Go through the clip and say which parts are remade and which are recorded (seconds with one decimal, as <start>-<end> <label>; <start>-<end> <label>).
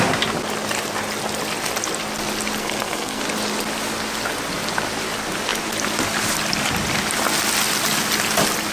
0.0-2.6 recorded; 2.6-3.2 remade; 3.2-8.7 recorded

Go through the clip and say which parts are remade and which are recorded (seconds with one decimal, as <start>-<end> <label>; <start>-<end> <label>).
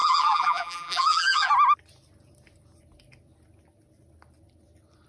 0.0-1.5 remade; 1.5-5.1 recorded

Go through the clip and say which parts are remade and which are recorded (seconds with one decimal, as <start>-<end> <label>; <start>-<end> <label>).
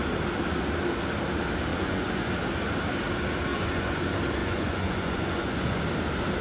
0.0-1.7 recorded; 1.7-2.3 remade; 2.3-3.5 recorded; 3.5-4.0 remade; 4.0-4.4 recorded; 4.4-5.8 remade; 5.8-6.4 recorded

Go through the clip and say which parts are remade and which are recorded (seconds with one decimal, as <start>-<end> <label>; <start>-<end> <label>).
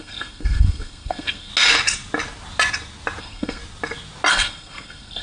0.0-1.5 remade; 1.5-3.2 recorded; 3.2-3.6 remade; 3.6-4.3 recorded; 4.3-5.2 remade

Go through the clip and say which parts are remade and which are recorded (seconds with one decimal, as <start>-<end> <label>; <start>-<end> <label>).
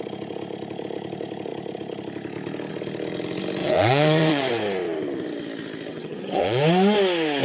0.0-3.6 recorded; 3.6-4.5 remade; 4.5-5.9 recorded; 5.9-6.6 remade; 6.6-7.4 recorded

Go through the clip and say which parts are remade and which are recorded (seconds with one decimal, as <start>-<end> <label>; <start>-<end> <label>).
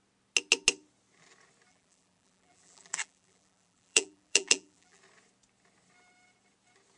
0.0-1.7 recorded; 1.7-5.0 remade; 5.0-7.0 recorded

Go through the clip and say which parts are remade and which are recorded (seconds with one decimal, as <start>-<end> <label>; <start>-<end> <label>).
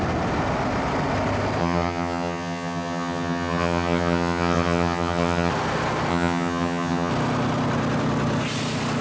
0.0-1.6 recorded; 1.6-5.5 remade; 5.5-6.1 recorded; 6.1-7.1 remade; 7.1-9.0 recorded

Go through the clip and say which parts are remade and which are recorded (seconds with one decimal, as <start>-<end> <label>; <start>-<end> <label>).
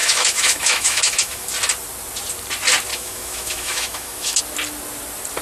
0.0-1.5 remade; 1.5-2.9 recorded; 2.9-4.4 remade; 4.4-5.4 recorded